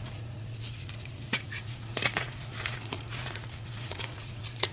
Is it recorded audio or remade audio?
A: remade